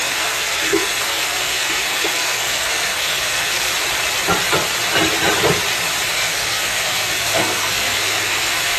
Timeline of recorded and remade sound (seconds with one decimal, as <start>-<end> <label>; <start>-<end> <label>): 0.0-3.7 remade; 3.7-6.1 recorded; 6.1-8.8 remade